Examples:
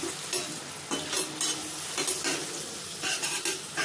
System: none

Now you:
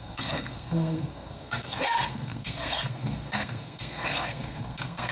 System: codec, SNAC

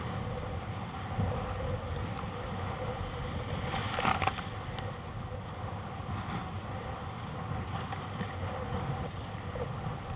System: none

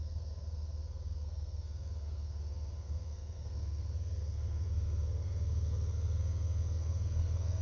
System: codec, SNAC